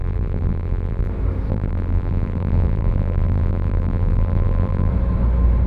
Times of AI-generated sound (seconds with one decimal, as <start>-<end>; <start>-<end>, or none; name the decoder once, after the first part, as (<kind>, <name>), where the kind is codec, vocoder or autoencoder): 0.0-1.1 (vocoder, BigVGAN v2); 1.5-4.9